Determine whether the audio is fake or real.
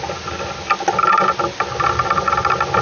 real